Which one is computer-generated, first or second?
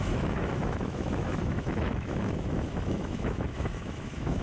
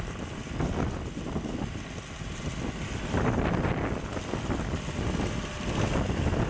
first